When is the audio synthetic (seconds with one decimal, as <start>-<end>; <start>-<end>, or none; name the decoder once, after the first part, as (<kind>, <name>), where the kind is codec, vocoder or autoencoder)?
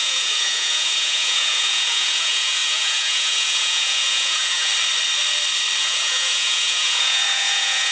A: 0.0-4.7 (vocoder, Vocos); 5.8-7.9